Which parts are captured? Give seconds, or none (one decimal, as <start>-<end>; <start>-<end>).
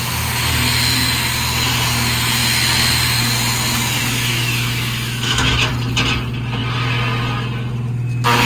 0.0-4.0; 5.7-8.5